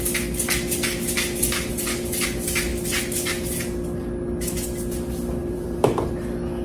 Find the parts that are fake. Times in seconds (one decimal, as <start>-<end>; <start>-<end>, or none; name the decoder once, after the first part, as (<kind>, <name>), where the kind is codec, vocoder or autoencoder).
5.4-6.1 (vocoder, BigVGAN v2)